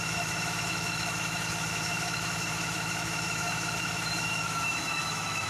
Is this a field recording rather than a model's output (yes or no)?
no